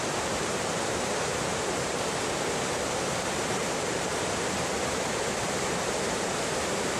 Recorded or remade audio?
remade